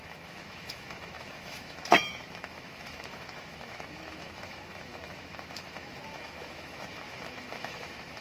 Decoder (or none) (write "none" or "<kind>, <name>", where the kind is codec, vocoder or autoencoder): autoencoder, DAC-VAE